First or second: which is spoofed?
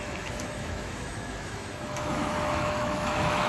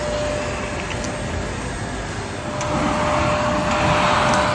first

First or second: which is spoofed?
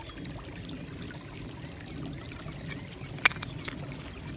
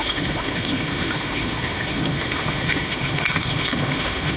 second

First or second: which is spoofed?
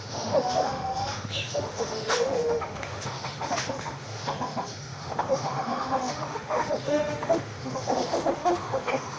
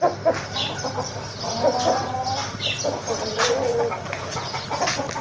first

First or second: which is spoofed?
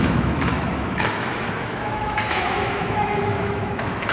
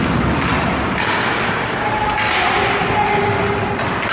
first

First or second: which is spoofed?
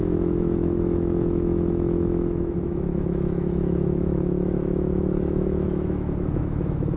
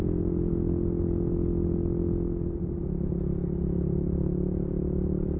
first